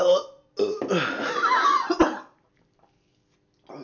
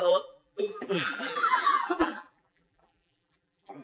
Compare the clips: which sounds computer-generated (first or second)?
second